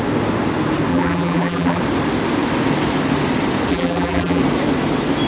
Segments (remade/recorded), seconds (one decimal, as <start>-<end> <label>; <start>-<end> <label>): 0.0-0.9 recorded; 0.9-1.8 remade; 1.8-3.7 recorded; 3.7-4.4 remade; 4.4-5.3 recorded